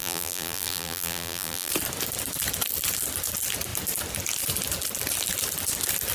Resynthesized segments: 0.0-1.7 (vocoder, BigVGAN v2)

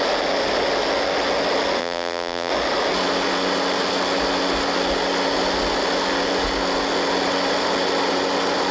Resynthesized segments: 1.8-2.5 (vocoder, BigVGAN v2)

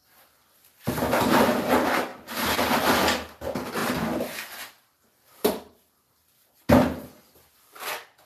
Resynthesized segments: 0.0-1.7 (vocoder, BigVGAN v2)

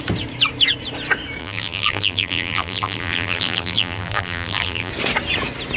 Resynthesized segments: 1.4-4.9 (vocoder, BigVGAN v2)

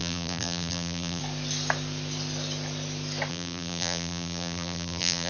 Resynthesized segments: 0.0-1.2 (vocoder, BigVGAN v2); 3.3-5.3

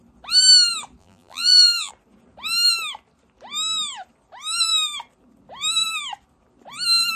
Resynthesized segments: 1.0-1.9 (vocoder, BigVGAN v2)